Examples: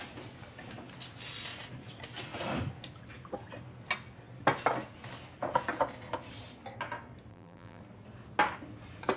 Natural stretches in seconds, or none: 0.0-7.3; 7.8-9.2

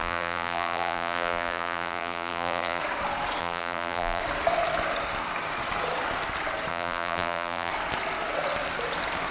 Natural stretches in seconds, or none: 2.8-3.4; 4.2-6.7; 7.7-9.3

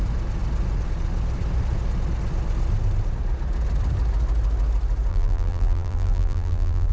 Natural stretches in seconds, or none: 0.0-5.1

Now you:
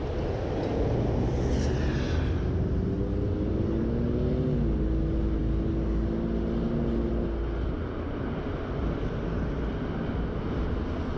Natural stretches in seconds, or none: 0.0-11.2